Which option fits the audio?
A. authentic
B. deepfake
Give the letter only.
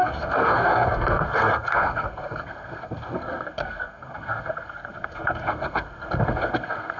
B